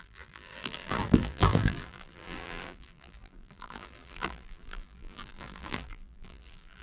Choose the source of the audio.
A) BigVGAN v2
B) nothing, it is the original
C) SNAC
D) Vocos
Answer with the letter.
A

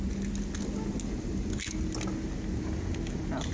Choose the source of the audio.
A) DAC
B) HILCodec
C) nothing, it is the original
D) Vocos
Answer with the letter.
C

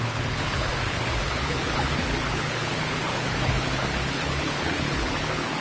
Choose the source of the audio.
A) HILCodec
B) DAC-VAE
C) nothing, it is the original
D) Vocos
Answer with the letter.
A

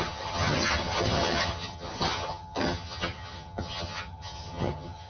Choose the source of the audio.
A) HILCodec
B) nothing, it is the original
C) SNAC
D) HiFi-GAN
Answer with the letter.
D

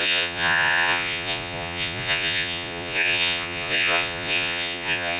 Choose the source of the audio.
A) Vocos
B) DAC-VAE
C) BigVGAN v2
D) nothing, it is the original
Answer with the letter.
A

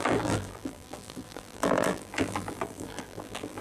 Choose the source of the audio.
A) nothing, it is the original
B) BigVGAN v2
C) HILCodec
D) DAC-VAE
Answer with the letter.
B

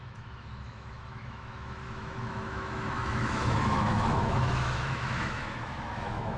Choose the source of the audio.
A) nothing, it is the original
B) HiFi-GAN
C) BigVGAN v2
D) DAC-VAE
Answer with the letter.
D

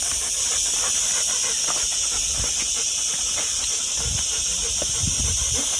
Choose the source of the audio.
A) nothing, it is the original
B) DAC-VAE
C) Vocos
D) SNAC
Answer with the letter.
A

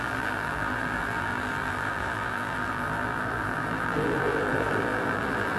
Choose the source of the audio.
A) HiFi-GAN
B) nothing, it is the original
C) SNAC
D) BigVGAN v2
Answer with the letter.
D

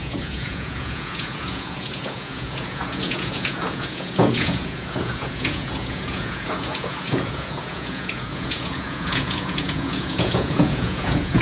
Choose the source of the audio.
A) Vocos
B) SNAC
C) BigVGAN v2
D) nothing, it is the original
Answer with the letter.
A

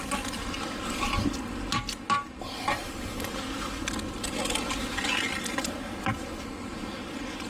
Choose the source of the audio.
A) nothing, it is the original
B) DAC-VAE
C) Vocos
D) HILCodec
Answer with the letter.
A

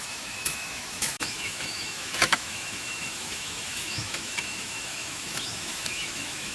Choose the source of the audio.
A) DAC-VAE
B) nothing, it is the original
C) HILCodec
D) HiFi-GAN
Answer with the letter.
A